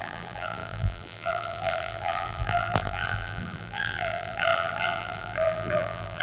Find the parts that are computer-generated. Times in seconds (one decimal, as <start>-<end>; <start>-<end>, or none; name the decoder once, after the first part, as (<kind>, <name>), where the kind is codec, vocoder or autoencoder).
0.0-6.2 (vocoder, BigVGAN v2)